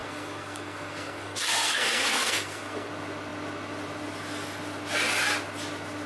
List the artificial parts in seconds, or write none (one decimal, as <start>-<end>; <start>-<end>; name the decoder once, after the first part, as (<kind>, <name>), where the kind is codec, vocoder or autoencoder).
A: 0.0-2.9 (codec, SNAC)